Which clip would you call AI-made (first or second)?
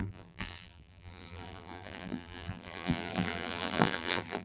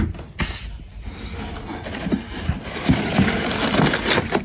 first